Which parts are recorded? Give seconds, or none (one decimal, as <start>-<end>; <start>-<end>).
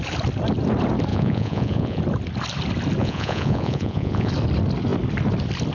0.0-1.1; 2.0-3.0; 4.3-5.7